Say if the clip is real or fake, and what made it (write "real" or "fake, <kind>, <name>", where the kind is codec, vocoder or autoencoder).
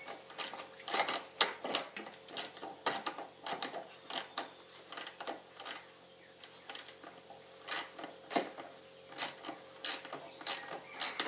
real